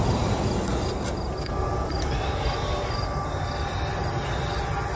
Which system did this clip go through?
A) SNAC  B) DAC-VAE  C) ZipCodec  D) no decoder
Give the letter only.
D